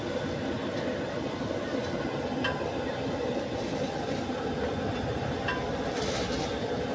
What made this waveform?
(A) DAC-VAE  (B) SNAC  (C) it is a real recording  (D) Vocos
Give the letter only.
C